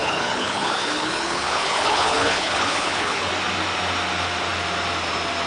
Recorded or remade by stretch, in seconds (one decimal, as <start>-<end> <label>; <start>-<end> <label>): 0.0-3.3 remade; 3.3-5.5 recorded